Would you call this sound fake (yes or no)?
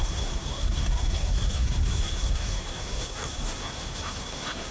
yes